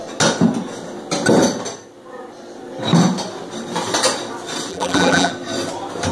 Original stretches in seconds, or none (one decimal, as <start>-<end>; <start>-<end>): 0.0-4.7; 5.3-6.1